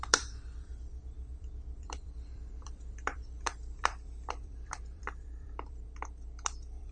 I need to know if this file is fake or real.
fake